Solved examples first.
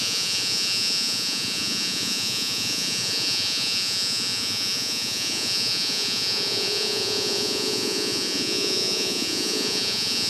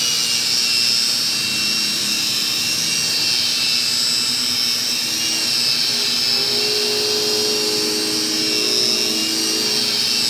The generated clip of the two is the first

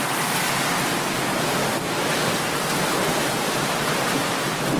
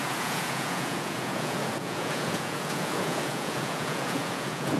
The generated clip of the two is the second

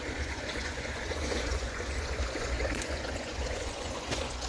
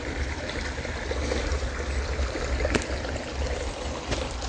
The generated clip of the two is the first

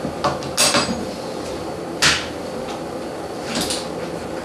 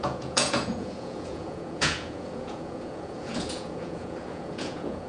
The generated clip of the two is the second